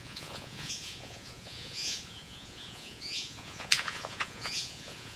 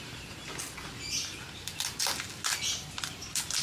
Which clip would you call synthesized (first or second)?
first